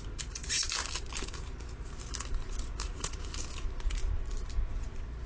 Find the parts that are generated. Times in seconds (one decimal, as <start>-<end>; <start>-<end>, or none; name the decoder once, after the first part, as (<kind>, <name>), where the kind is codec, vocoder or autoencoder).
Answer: 2.8-3.4 (vocoder, Vocos)